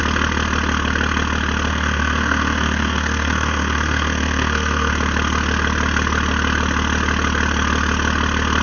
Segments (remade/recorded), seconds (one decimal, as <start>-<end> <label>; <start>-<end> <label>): 0.0-1.7 recorded; 1.7-4.9 remade; 4.9-8.6 recorded